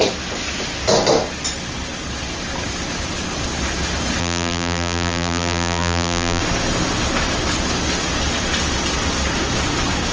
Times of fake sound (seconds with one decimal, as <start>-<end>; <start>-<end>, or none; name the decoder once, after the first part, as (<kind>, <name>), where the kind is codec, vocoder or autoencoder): 4.2-6.4 (vocoder, BigVGAN v2)